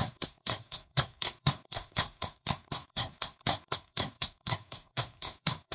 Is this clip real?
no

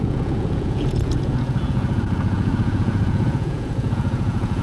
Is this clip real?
no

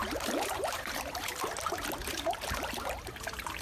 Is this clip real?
no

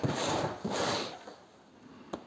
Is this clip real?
yes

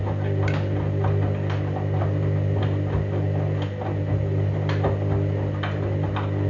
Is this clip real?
yes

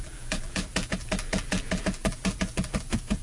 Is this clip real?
no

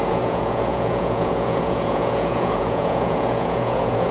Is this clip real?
no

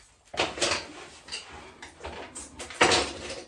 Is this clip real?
yes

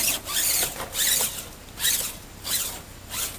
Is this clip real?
yes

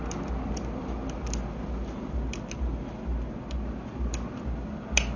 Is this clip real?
yes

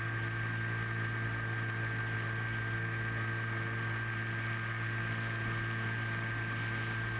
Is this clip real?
yes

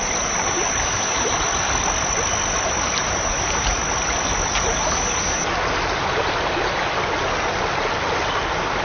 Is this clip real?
yes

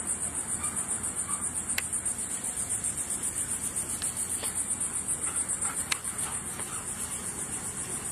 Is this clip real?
yes